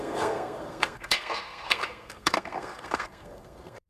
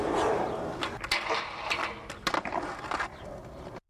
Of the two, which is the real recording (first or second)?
second